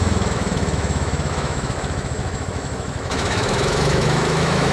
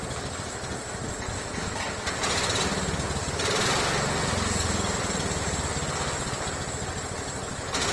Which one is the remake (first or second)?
first